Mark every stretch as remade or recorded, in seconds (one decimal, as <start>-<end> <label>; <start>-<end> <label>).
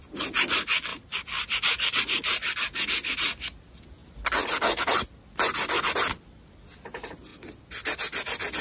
0.0-0.9 recorded; 0.9-2.0 remade; 2.0-8.6 recorded